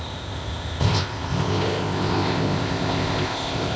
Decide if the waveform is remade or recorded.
remade